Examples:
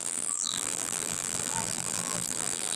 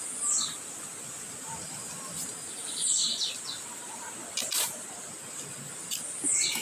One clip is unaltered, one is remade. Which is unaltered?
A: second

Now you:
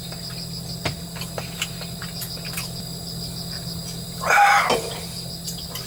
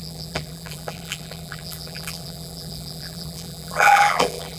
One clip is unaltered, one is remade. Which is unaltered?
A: first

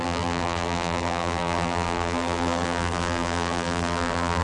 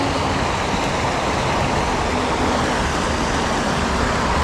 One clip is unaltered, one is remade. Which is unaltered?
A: second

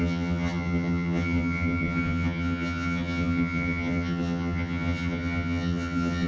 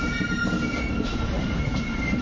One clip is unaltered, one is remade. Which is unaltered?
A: second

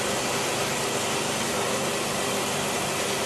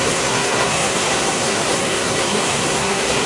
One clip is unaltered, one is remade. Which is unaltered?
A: first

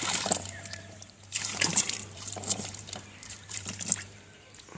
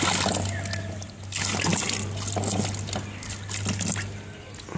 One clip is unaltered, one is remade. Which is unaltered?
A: second